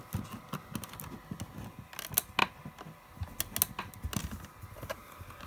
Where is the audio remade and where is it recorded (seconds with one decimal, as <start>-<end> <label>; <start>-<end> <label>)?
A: 0.0-5.5 recorded